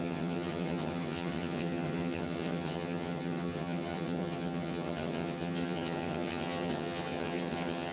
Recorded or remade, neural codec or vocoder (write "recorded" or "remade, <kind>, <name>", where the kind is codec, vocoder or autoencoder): remade, vocoder, HiFi-GAN